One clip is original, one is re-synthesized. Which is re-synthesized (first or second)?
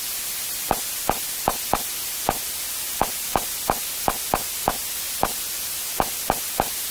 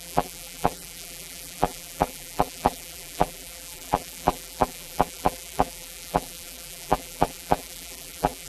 second